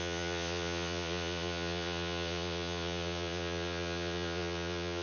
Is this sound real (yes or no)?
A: no